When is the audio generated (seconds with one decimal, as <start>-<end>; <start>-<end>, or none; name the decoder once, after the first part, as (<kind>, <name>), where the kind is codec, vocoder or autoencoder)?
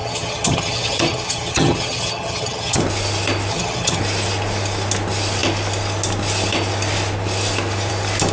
0.0-2.8 (vocoder, HiFi-GAN); 3.5-4.0